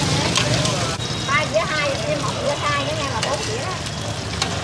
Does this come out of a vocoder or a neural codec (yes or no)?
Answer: no